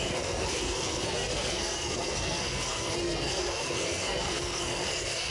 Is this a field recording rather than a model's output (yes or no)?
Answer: no